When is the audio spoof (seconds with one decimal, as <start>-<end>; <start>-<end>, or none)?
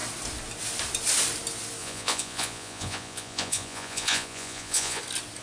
1.8-5.0